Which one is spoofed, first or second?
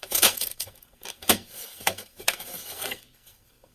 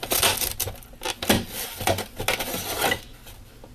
first